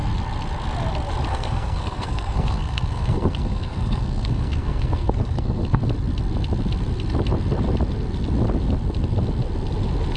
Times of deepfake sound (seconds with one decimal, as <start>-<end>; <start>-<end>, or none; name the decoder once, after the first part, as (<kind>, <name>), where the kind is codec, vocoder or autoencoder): 1.3-5.8 (codec, SNAC)